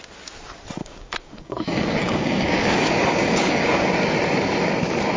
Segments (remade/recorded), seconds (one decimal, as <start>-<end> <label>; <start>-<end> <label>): 0.0-0.8 recorded; 0.8-3.9 remade; 3.9-5.2 recorded